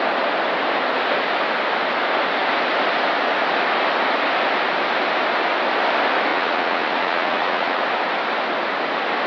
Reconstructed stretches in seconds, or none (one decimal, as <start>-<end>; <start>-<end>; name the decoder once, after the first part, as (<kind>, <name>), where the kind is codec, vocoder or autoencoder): 6.3-7.8 (vocoder, Vocos)